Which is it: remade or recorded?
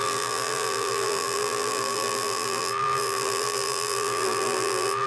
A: remade